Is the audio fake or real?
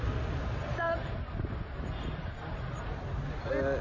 real